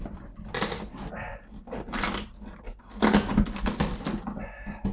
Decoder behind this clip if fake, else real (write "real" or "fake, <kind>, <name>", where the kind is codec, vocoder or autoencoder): real